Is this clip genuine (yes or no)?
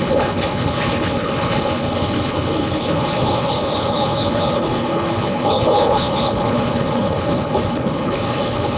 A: no